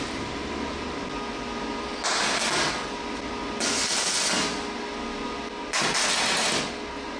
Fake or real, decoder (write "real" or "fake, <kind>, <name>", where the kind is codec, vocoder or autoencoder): real